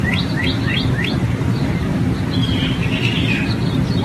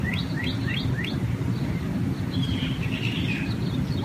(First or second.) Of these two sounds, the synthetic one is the second